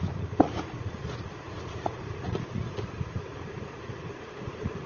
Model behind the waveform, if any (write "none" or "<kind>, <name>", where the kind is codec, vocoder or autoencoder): vocoder, Vocos